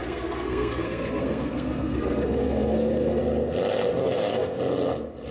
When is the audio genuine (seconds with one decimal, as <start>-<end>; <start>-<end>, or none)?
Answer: 3.2-4.0; 4.6-5.3